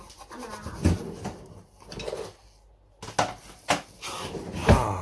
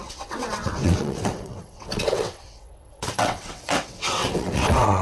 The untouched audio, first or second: first